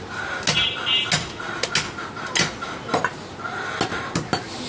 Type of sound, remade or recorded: recorded